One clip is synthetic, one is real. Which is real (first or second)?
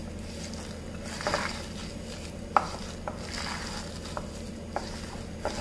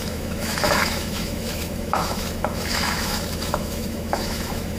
first